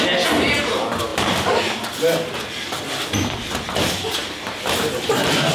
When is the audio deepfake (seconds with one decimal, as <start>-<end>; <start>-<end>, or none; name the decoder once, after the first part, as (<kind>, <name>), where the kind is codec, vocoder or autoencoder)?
1.1-2.9 (vocoder, BigVGAN v2); 4.2-5.5